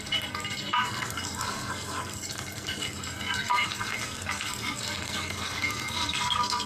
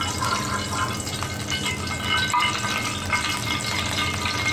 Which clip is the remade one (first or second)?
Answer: first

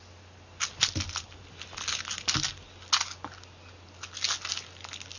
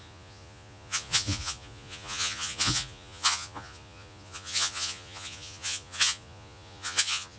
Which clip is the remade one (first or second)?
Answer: second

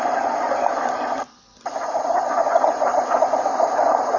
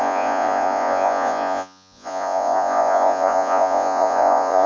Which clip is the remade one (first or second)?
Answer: second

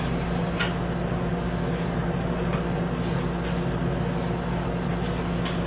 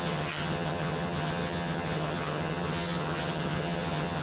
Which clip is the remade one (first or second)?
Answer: second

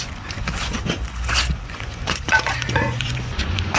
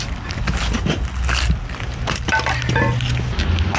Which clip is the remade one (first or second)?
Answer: first